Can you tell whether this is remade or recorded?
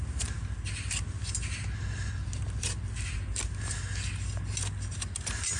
recorded